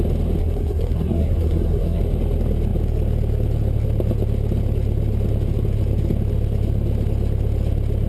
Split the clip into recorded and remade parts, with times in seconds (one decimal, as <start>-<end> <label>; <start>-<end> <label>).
0.0-0.4 recorded; 0.4-2.0 remade; 2.0-8.1 recorded